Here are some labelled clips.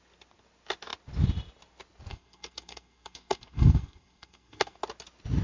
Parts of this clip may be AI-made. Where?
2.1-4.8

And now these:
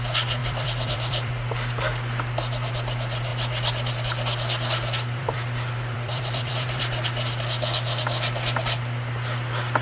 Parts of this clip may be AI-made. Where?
0.4-1.3; 5.2-6.8

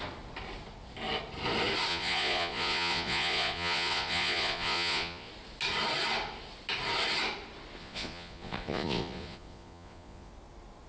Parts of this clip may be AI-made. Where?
1.9-5.3; 7.8-10.3

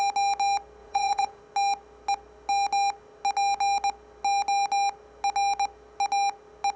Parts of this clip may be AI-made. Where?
0.8-1.4